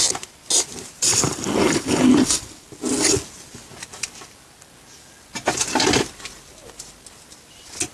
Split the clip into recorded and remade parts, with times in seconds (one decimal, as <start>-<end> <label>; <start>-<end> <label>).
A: 0.0-7.9 recorded

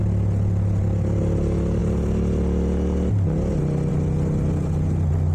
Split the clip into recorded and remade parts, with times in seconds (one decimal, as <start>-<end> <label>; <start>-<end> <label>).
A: 0.0-5.3 recorded

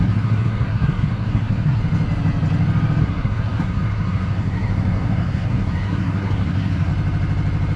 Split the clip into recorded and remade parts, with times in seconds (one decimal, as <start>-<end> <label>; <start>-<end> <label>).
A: 0.0-1.8 remade; 1.8-3.0 recorded; 3.0-6.9 remade; 6.9-7.8 recorded

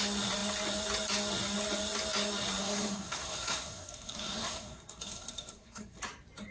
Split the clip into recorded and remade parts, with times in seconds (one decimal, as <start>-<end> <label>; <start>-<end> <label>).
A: 0.0-2.6 recorded; 2.6-6.0 remade; 6.0-6.5 recorded

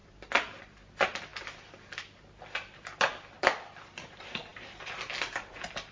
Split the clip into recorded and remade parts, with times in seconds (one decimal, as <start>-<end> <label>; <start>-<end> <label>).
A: 0.0-5.9 recorded

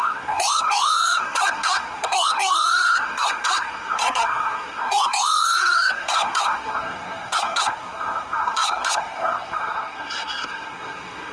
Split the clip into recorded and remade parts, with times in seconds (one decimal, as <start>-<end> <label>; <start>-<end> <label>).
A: 0.0-11.3 remade